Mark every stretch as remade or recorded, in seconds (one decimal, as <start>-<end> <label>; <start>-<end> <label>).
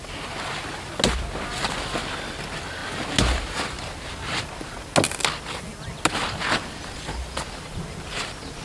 0.0-8.6 recorded